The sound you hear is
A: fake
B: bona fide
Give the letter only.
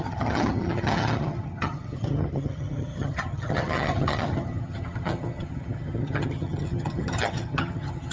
A